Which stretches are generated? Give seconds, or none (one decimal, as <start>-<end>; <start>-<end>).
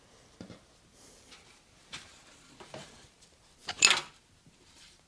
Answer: none